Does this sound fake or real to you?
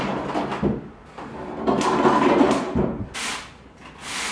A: real